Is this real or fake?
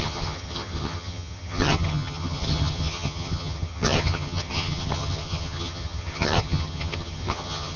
fake